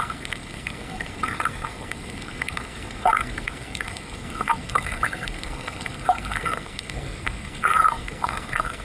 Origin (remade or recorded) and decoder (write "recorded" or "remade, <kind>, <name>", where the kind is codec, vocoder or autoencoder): remade, codec, SNAC